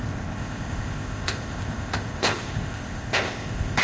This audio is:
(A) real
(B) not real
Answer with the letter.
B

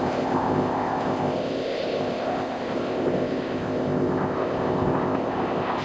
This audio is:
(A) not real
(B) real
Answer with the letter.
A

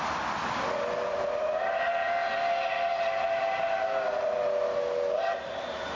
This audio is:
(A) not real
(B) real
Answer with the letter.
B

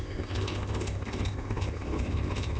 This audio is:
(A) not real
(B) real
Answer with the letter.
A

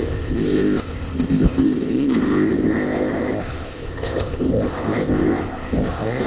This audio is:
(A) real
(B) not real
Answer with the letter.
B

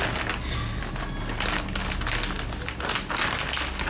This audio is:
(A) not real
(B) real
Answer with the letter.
B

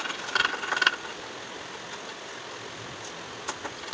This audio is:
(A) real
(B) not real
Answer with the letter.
A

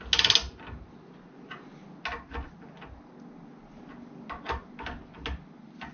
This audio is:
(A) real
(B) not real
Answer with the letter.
A